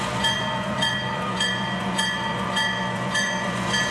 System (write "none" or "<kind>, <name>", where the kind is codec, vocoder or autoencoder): vocoder, Vocos